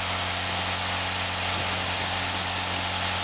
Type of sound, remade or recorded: recorded